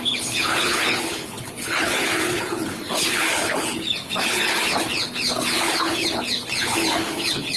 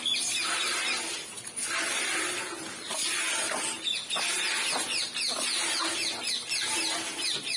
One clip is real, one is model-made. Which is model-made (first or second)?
first